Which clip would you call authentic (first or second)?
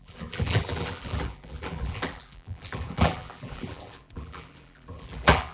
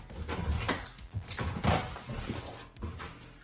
second